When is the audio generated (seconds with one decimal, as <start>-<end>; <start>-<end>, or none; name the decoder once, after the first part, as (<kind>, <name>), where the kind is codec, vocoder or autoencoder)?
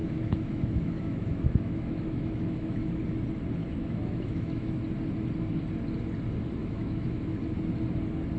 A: 0.0-3.0 (autoencoder, DAC-VAE); 3.6-4.8; 6.6-7.4